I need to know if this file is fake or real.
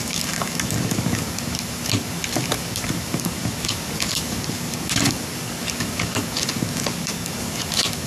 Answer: fake